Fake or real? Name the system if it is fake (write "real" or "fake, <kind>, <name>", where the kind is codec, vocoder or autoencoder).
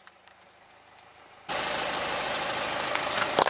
real